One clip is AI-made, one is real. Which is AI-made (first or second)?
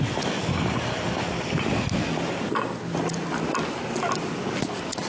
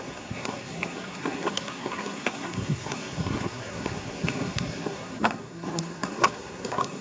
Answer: second